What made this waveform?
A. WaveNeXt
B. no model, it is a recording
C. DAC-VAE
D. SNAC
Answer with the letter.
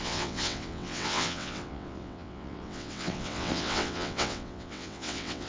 A